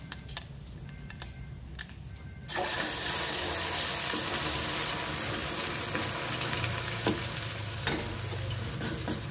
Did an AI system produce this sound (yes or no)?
no